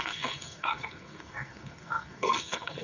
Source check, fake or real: fake